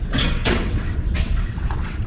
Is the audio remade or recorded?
remade